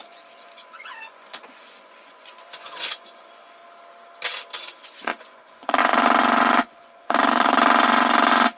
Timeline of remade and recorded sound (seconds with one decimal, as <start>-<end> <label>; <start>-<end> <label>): 0.0-3.6 remade; 3.6-4.5 recorded; 4.5-8.6 remade